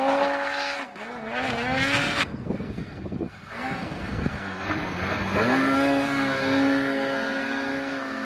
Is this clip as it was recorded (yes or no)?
no